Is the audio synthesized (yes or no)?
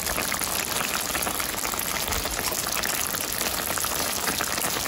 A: no